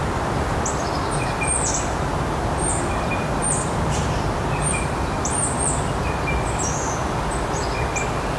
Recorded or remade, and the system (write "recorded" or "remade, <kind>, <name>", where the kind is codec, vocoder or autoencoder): recorded